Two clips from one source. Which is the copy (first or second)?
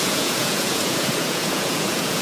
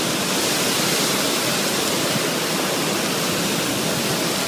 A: first